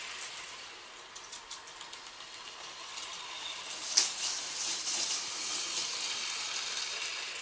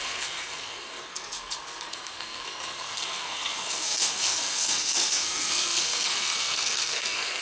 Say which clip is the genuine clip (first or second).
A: first